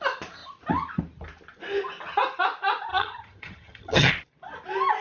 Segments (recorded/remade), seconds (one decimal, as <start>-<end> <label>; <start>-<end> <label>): 0.0-2.9 recorded; 2.9-4.1 remade; 4.1-5.0 recorded